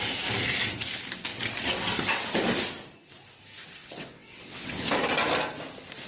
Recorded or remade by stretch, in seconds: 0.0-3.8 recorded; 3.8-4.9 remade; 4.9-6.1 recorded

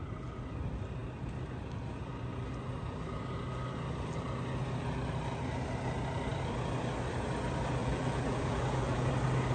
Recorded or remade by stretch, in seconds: 0.0-7.8 recorded; 7.8-9.1 remade; 9.1-9.5 recorded

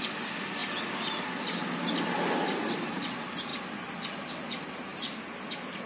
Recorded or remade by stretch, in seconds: 0.0-5.9 recorded